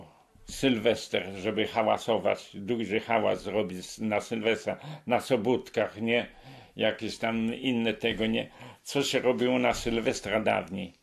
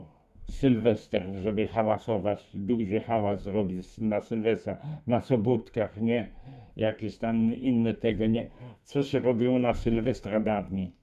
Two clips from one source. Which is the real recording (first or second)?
first